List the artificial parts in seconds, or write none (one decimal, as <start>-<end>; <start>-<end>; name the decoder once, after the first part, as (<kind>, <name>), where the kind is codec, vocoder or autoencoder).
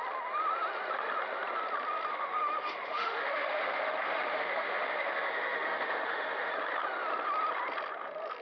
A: 2.1-6.5 (autoencoder, DAC-VAE)